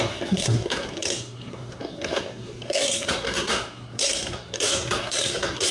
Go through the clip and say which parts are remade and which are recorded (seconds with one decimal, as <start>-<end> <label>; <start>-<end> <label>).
0.0-5.7 remade